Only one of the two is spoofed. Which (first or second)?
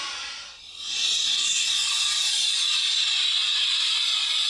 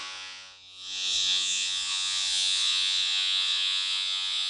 second